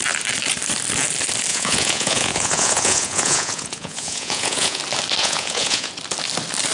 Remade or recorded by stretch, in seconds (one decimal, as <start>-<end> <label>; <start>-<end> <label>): 0.0-1.5 recorded; 1.5-4.8 remade; 4.8-5.2 recorded; 5.2-5.9 remade; 5.9-6.7 recorded